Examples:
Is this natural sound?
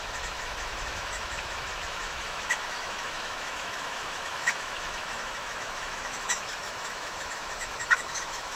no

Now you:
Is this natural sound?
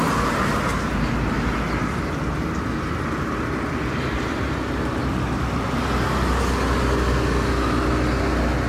yes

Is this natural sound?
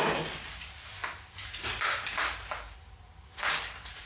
yes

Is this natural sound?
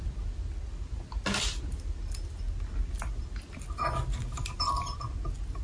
yes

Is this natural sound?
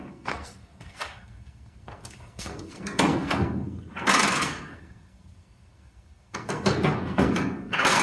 no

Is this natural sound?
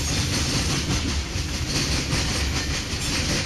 yes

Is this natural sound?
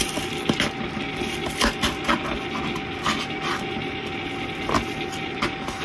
yes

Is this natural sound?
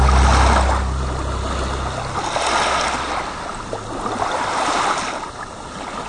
yes